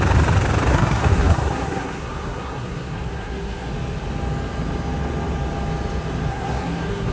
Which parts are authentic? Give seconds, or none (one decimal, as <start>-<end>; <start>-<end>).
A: 0.0-0.7; 3.7-6.3